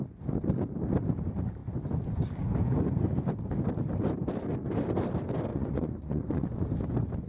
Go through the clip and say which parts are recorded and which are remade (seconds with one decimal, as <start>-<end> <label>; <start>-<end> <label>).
0.0-5.5 recorded; 5.5-6.7 remade; 6.7-7.3 recorded